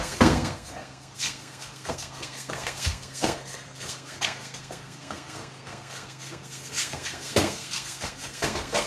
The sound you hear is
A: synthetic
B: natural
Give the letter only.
A